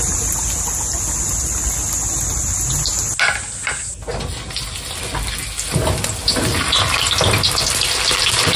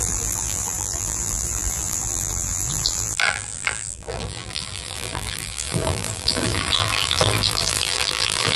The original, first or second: first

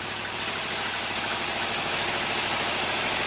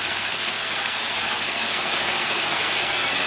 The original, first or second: first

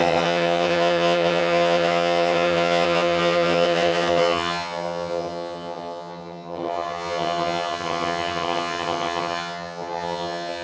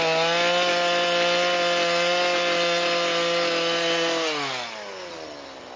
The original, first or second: second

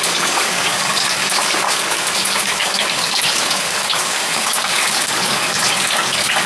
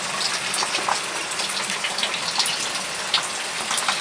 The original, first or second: second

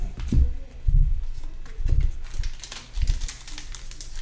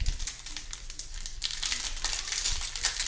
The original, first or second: first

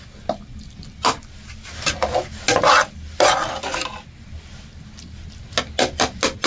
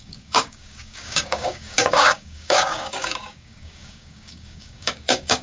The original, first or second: first